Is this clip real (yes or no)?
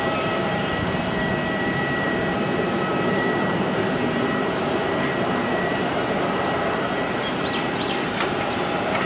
no